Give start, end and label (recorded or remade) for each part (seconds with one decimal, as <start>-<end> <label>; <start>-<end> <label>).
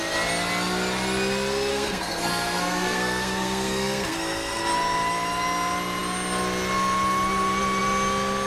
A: 0.0-1.7 recorded; 1.7-4.6 remade; 4.6-8.5 recorded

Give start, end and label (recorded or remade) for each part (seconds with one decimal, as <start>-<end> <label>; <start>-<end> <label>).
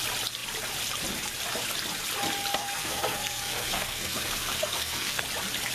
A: 0.0-2.5 recorded; 2.5-5.2 remade; 5.2-5.7 recorded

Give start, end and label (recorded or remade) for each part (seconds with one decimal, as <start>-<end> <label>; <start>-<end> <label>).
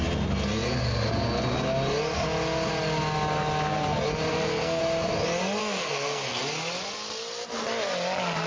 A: 0.0-4.3 recorded; 4.3-4.8 remade; 4.8-5.6 recorded; 5.6-6.4 remade; 6.4-8.5 recorded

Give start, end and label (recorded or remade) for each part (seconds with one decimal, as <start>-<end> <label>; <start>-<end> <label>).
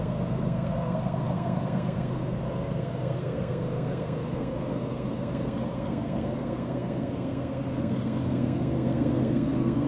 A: 0.0-9.9 remade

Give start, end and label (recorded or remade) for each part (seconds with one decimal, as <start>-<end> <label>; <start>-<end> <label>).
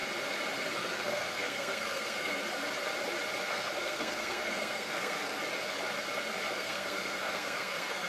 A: 0.0-0.7 recorded; 0.7-2.4 remade; 2.4-3.5 recorded; 3.5-5.4 remade; 5.4-6.5 recorded; 6.5-8.1 remade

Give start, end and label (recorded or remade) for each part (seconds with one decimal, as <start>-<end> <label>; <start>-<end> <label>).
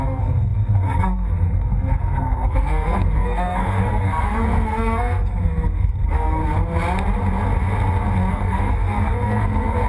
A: 0.0-6.4 remade; 6.4-8.3 recorded; 8.3-9.9 remade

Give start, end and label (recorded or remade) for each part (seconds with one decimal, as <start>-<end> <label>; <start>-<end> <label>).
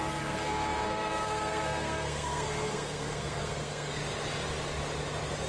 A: 0.0-4.0 remade; 4.0-5.5 recorded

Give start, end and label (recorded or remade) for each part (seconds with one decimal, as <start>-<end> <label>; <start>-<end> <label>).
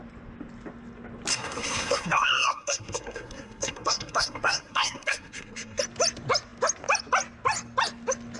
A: 0.0-1.3 recorded; 1.3-5.8 remade; 5.8-8.4 recorded